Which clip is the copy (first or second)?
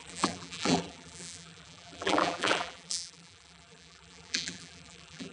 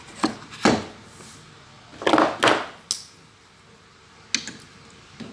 first